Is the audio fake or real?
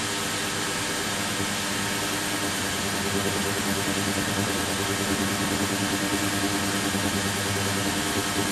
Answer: real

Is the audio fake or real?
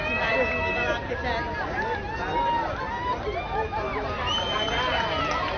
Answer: real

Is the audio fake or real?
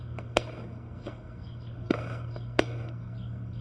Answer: fake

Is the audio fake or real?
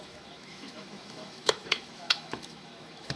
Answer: fake